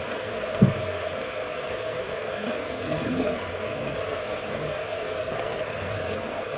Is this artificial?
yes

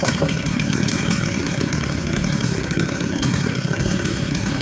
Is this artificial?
yes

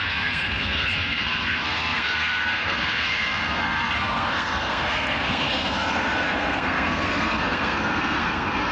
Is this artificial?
yes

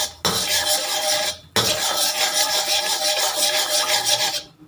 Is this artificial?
no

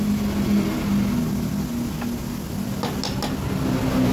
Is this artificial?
no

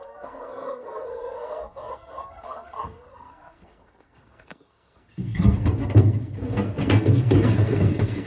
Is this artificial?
yes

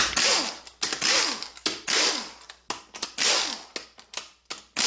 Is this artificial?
no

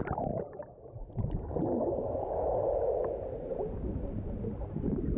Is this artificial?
no